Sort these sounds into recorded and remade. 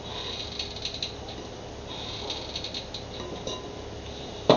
recorded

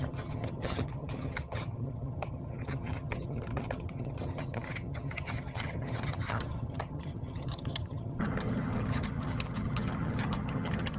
remade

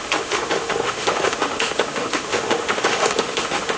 remade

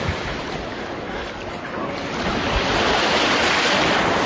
recorded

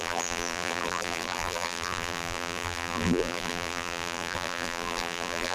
remade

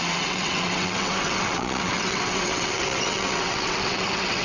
remade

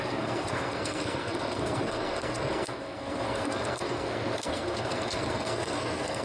remade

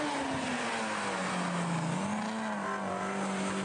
recorded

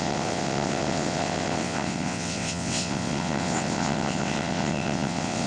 remade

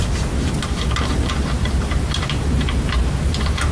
recorded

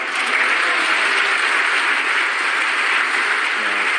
recorded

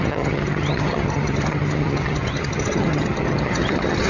remade